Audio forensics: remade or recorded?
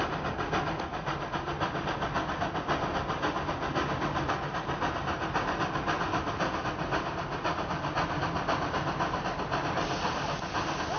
recorded